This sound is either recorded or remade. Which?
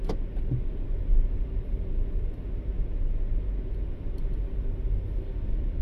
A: recorded